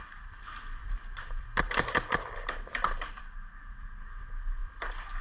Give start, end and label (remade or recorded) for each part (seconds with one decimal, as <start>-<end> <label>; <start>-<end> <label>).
0.0-0.8 recorded; 0.8-3.2 remade; 3.2-4.6 recorded; 4.6-5.2 remade